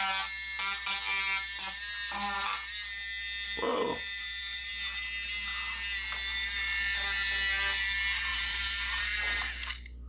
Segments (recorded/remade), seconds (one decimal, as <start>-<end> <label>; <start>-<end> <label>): 0.0-3.7 recorded; 3.7-4.7 remade; 4.7-8.3 recorded; 8.3-9.0 remade; 9.0-10.1 recorded